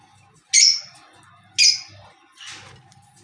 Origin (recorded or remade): recorded